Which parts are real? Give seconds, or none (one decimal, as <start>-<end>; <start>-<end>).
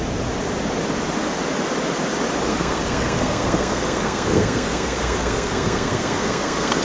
0.0-2.5